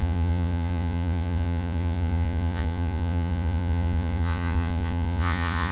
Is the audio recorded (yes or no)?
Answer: no